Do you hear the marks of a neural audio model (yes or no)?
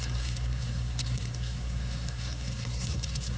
yes